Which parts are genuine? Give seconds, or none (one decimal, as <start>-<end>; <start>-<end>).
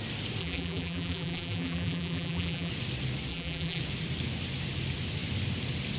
0.0-0.4; 2.7-3.3; 3.8-6.0